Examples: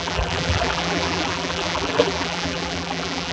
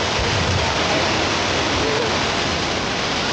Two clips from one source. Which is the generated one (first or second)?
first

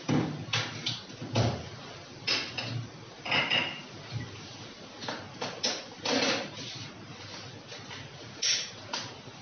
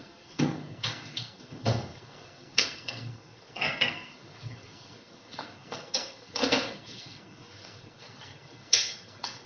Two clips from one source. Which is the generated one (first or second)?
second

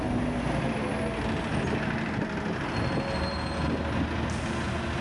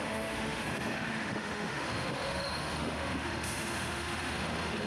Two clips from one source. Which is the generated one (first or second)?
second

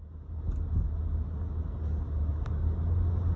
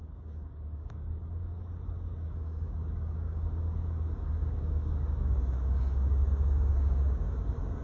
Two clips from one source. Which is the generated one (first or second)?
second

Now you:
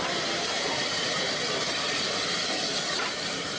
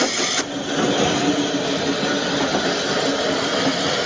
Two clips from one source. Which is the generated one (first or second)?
first